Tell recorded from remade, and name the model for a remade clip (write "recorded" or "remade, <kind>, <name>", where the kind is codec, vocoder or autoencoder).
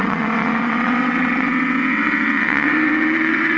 remade, vocoder, WaveNeXt